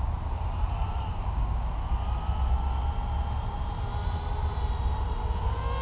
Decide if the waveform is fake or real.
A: real